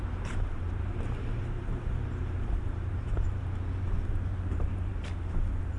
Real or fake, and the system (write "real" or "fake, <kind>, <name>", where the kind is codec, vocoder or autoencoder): fake, vocoder, BigVGAN v2